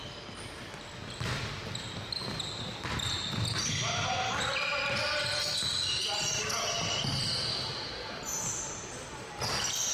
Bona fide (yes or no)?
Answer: yes